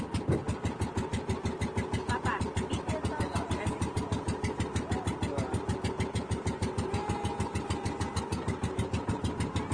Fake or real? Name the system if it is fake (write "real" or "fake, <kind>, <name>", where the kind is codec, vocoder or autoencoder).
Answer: real